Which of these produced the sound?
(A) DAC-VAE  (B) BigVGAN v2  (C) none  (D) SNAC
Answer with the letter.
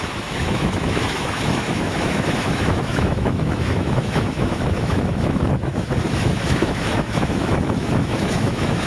A